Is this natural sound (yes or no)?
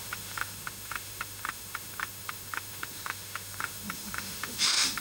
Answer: no